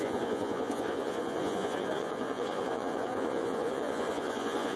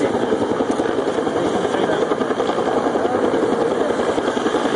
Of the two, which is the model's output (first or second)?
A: first